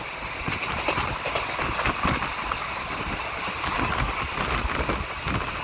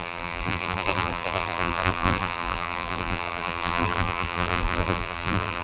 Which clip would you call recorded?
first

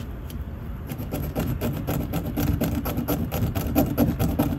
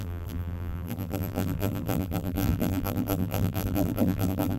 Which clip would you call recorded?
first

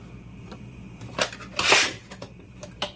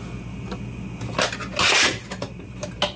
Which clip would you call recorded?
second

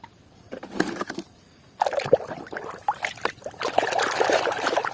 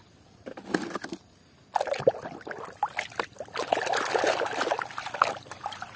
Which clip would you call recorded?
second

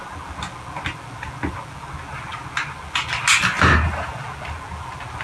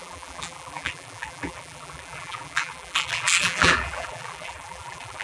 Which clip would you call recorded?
first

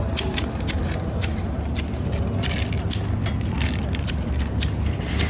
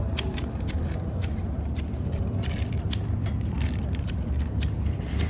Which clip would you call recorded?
first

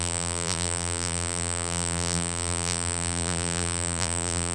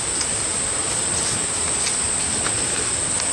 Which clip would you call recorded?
second